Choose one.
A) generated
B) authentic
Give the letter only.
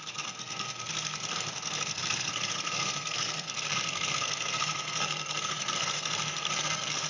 A